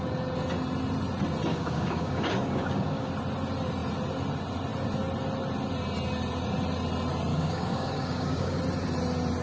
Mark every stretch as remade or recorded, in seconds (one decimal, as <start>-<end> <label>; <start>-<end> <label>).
0.0-1.5 recorded; 1.5-3.1 remade; 3.1-7.3 recorded; 7.3-8.6 remade; 8.6-9.4 recorded

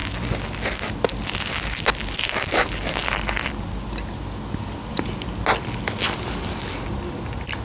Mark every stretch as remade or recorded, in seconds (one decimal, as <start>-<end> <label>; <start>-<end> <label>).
0.0-7.6 recorded

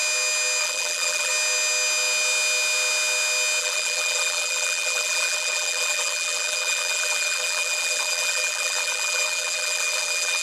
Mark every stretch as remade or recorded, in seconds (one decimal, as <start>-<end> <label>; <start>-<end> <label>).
0.0-0.6 recorded; 0.6-1.3 remade; 1.3-3.6 recorded; 3.6-10.4 remade

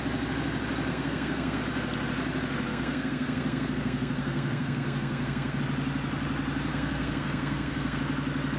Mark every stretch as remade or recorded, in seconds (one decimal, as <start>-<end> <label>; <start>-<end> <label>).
0.0-0.9 recorded; 0.9-1.6 remade; 1.6-2.7 recorded; 2.7-5.6 remade; 5.6-6.7 recorded; 6.7-8.0 remade; 8.0-8.6 recorded

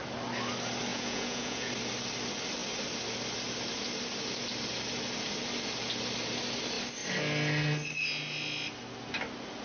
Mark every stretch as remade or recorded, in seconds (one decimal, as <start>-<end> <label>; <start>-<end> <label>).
0.0-0.9 recorded; 0.9-1.7 remade; 1.7-9.6 recorded